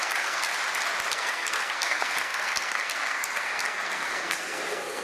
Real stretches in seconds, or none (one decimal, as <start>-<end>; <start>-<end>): 0.5-1.1